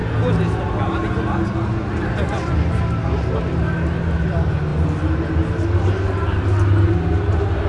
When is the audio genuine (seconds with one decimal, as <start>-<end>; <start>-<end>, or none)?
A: 0.0-7.7